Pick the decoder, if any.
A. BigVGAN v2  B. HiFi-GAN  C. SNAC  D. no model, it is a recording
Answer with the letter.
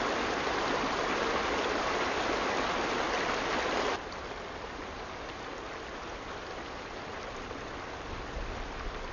D